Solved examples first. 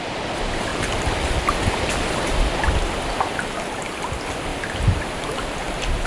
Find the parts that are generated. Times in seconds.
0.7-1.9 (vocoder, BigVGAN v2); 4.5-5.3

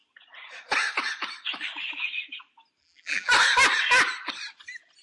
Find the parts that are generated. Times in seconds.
2.8-3.3 (vocoder, BigVGAN v2)